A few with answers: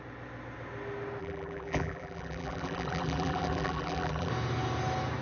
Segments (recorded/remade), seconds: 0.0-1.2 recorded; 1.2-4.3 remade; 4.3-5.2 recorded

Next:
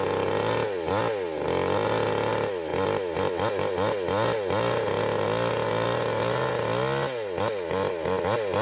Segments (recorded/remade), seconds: 0.0-8.6 recorded

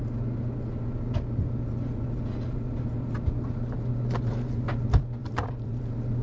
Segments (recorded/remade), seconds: 0.0-5.2 recorded; 5.2-6.2 remade

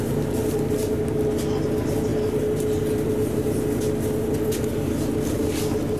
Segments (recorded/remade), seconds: 0.0-6.0 recorded